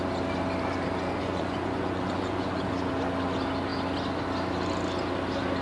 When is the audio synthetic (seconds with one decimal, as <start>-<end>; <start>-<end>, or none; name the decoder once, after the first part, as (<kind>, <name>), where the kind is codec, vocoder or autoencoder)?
1.2-2.9 (vocoder, Vocos)